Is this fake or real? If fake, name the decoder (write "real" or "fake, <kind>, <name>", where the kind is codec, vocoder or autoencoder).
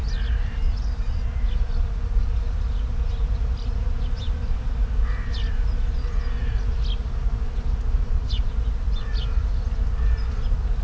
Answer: real